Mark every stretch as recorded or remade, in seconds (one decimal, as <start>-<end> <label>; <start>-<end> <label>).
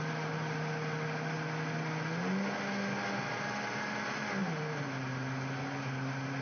0.0-6.4 recorded